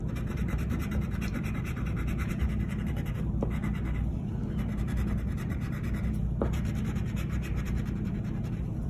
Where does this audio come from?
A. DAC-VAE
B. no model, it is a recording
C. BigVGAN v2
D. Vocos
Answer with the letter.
C